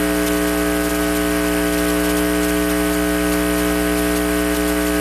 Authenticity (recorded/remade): recorded